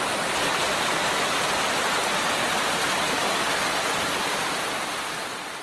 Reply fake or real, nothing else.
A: real